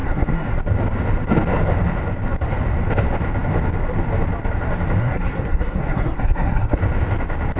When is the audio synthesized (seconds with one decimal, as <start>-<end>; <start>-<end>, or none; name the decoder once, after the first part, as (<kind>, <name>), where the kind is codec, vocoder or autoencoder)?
0.0-0.5 (codec, SNAC); 5.0-6.8